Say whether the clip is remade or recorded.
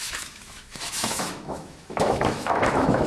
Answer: remade